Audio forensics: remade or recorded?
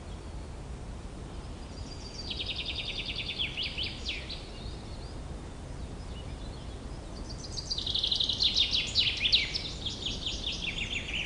recorded